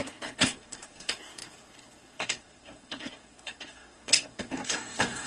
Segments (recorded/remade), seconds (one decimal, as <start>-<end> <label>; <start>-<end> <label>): 0.0-5.3 remade